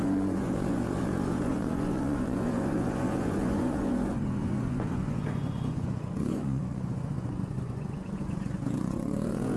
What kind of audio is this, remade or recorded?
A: remade